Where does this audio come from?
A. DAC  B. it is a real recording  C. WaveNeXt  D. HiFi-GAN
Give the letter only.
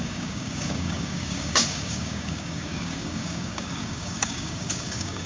A